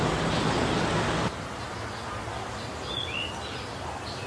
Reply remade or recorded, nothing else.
recorded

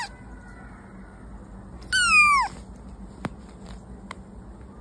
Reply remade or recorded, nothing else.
recorded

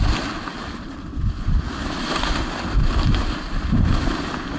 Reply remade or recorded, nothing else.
recorded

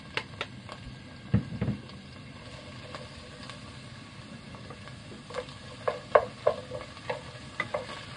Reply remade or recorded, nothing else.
recorded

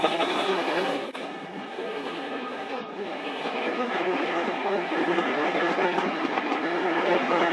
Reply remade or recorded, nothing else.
remade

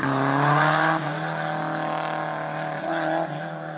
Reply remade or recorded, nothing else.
recorded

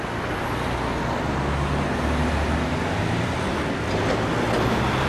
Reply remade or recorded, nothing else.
recorded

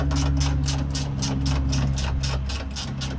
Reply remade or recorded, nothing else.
recorded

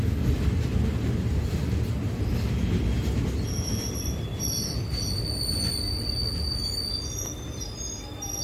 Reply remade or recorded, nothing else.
recorded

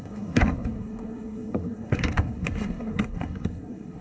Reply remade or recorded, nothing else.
remade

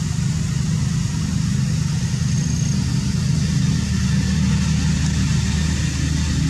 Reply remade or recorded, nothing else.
recorded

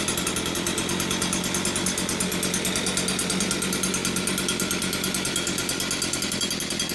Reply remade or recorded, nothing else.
recorded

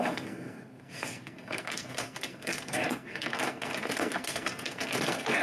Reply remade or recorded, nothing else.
remade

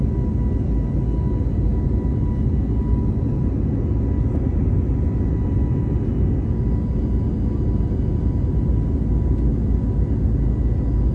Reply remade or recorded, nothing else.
recorded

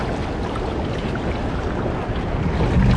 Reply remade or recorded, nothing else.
recorded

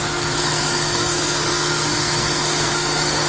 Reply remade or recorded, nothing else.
remade